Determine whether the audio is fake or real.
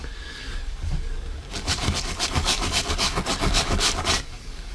fake